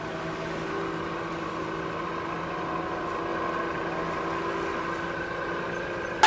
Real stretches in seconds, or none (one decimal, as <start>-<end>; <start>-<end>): 0.0-6.3